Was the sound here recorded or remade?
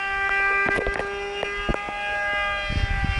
recorded